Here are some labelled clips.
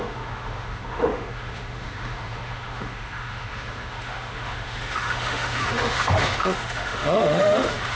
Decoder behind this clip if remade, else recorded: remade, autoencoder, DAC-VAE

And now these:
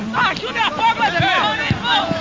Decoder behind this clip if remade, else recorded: recorded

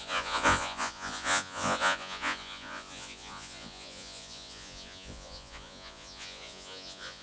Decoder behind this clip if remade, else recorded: remade, vocoder, Vocos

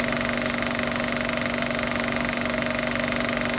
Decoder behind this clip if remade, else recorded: recorded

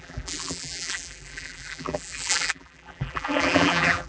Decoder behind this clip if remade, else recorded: remade, vocoder, BigVGAN v2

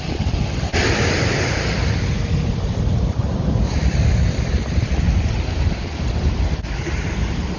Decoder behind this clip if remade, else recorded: recorded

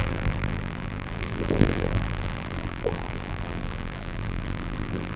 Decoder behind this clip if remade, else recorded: remade, vocoder, BigVGAN v2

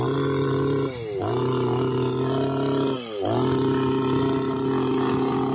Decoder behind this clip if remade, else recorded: recorded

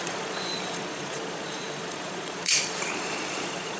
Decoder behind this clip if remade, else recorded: remade, vocoder, Vocos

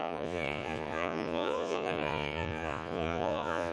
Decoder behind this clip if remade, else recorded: remade, vocoder, Vocos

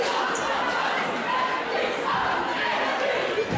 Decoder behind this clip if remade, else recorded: recorded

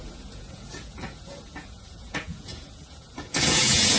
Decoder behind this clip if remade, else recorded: remade, vocoder, Vocos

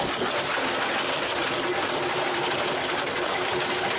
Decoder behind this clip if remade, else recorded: recorded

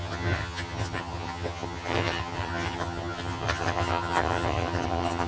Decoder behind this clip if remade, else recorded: remade, vocoder, HiFi-GAN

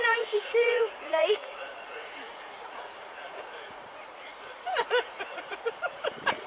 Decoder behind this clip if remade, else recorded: remade, vocoder, Vocos